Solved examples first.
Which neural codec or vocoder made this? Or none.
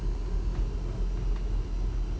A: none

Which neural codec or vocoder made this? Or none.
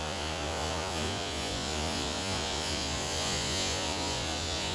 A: vocoder, Vocos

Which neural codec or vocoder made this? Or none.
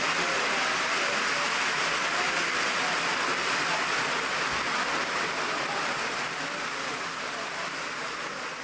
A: none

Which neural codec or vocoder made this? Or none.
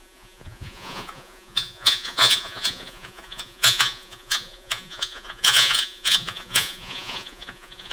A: vocoder, Vocos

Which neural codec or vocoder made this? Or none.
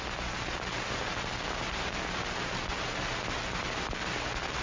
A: none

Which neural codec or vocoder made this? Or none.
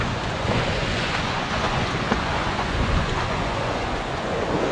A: vocoder, Vocos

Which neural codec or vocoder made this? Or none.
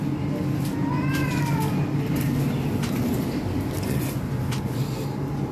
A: none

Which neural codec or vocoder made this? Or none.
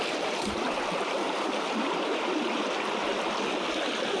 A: none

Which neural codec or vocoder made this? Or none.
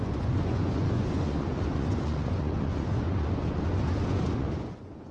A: vocoder, Vocos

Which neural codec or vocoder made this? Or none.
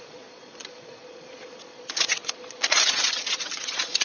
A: vocoder, Vocos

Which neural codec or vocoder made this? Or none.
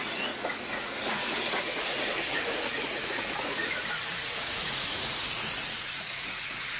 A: vocoder, Vocos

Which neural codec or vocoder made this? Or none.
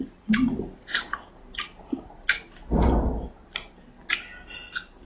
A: none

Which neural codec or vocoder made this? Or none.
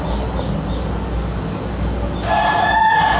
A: none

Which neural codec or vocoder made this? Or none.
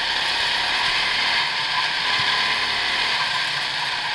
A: none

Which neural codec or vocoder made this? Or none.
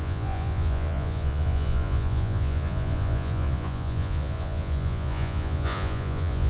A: vocoder, Vocos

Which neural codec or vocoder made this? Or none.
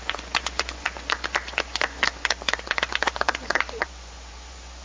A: vocoder, Vocos